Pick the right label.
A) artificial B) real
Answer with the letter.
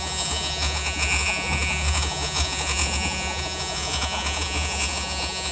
A